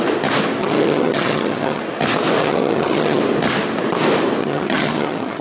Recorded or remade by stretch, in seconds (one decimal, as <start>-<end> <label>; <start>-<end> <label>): 0.0-0.6 recorded; 0.6-1.8 remade; 1.8-2.4 recorded; 2.4-3.2 remade; 3.2-4.4 recorded; 4.4-5.4 remade